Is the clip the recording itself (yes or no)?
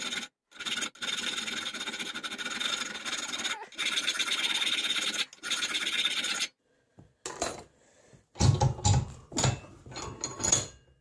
yes